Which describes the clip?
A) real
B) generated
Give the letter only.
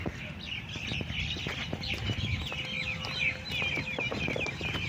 A